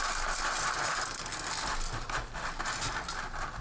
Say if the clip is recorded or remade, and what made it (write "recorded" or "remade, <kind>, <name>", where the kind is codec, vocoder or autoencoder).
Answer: recorded